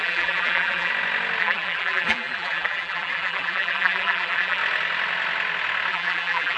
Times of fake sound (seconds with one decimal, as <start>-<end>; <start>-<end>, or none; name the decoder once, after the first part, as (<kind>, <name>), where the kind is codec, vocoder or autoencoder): 0.0-0.9 (vocoder, BigVGAN v2); 1.4-4.6; 5.9-6.6